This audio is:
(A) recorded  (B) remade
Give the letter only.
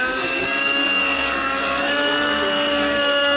B